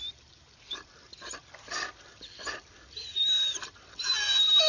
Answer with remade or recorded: remade